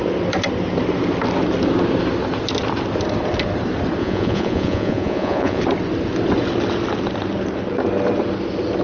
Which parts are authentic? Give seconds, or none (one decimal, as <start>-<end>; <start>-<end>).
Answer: 0.0-4.0; 5.6-8.8